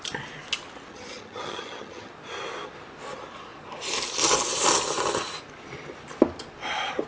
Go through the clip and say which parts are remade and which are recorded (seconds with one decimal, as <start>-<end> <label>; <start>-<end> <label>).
0.0-0.9 recorded; 0.9-2.1 remade; 2.1-7.1 recorded